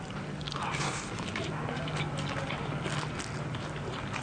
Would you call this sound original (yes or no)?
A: yes